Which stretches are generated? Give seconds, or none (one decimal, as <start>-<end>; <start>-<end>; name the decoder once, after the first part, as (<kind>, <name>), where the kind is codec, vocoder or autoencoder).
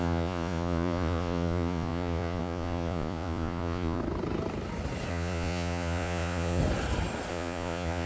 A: 0.0-4.0 (vocoder, Vocos); 5.1-6.6; 7.3-8.1